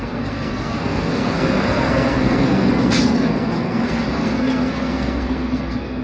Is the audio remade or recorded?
remade